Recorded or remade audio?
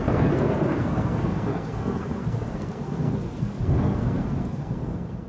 remade